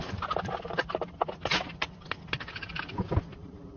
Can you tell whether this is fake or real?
real